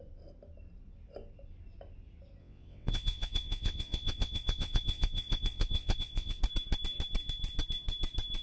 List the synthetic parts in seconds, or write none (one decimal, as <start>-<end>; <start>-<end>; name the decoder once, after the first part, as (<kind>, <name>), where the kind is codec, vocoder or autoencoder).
2.4-6.4 (vocoder, WaveNeXt)